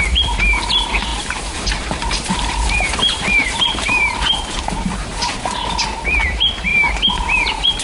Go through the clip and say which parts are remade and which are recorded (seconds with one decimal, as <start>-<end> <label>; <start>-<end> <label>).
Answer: 0.0-1.1 recorded; 1.1-5.4 remade; 5.4-6.7 recorded; 6.7-7.8 remade